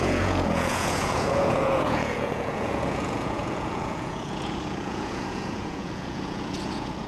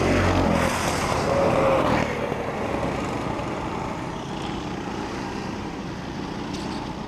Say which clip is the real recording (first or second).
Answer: second